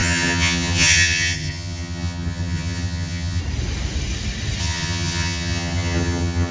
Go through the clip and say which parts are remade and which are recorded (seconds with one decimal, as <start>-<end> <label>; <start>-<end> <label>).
0.0-3.4 remade; 3.4-4.6 recorded; 4.6-6.5 remade

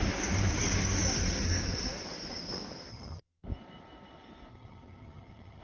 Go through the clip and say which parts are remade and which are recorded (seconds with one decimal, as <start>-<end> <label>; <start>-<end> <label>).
0.0-2.9 recorded; 2.9-3.4 remade; 3.4-4.5 recorded; 4.5-5.6 remade